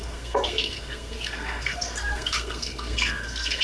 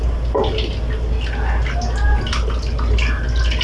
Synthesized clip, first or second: first